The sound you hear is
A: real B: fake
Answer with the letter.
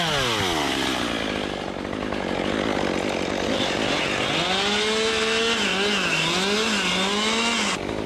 A